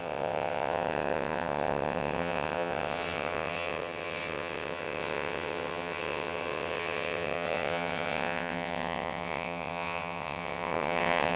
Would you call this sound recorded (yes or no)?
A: no